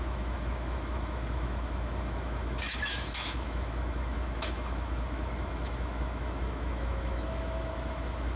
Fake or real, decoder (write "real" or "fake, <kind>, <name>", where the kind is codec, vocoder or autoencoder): fake, autoencoder, DAC-VAE